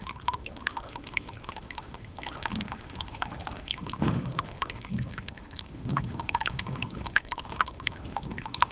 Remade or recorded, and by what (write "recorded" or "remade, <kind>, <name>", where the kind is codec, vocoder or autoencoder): remade, autoencoder, DAC-VAE